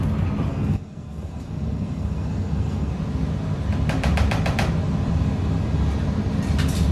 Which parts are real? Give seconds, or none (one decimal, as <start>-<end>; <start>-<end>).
0.0-0.5; 2.9-6.9